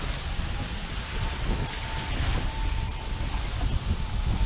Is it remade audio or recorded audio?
recorded